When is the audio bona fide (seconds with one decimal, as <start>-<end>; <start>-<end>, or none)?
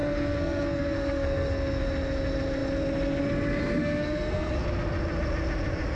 1.8-3.8; 4.5-6.0